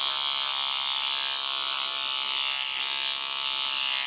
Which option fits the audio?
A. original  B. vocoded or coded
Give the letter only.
A